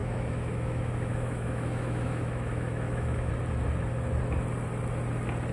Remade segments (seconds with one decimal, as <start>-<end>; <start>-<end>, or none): 0.0-3.3